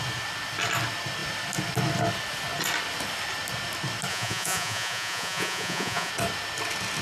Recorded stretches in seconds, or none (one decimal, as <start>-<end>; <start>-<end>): 0.0-4.1; 6.1-7.0